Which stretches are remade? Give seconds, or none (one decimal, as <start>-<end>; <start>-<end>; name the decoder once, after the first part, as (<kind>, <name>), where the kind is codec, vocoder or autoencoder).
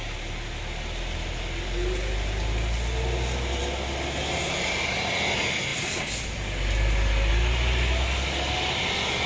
none